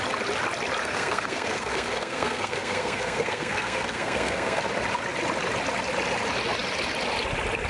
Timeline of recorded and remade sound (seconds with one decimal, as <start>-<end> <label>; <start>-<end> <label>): 0.0-0.8 recorded; 0.8-4.6 remade; 4.6-7.7 recorded